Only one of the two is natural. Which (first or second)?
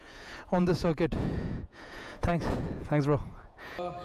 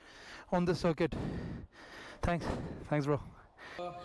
second